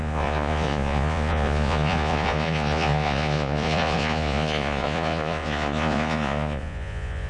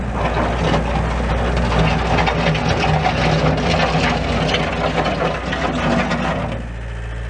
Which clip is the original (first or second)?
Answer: second